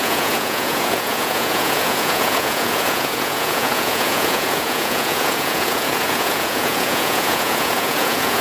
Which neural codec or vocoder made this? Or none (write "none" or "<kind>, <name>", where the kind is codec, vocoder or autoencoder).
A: vocoder, Vocos